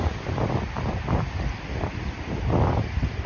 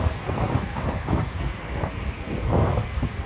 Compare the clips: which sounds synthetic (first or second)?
second